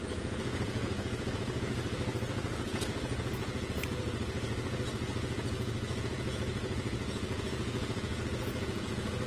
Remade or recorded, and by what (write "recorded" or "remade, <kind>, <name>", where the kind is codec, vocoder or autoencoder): remade, vocoder, Vocos